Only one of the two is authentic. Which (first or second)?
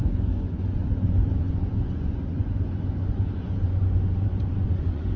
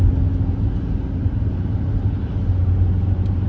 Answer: second